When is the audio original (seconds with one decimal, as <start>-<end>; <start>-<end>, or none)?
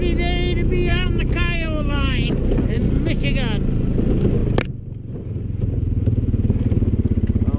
0.0-0.9; 2.8-7.6